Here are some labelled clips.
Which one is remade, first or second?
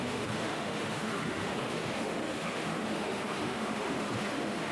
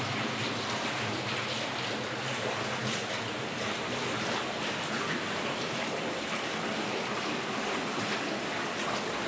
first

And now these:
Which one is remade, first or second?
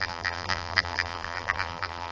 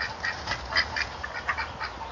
first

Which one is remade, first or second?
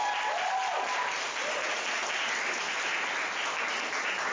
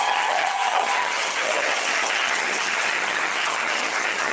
second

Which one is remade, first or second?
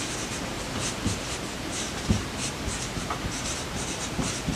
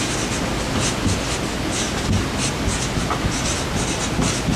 first